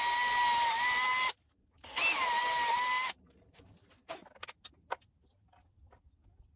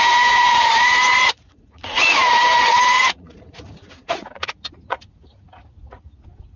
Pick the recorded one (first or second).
first